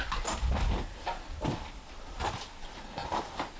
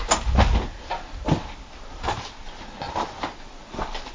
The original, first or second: second